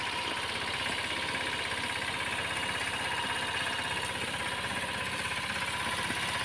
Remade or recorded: recorded